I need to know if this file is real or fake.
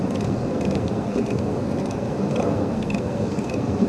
fake